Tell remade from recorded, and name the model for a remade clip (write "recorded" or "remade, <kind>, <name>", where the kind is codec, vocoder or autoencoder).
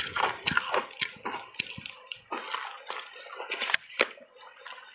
recorded